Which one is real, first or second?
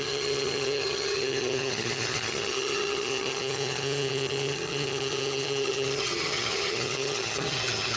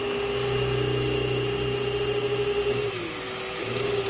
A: second